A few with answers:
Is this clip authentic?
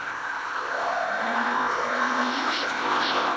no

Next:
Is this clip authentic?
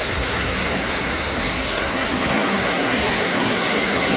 no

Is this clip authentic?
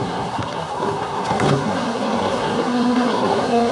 no